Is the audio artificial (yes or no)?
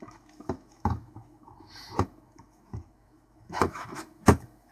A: yes